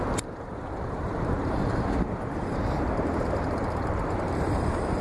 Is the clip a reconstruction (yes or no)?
yes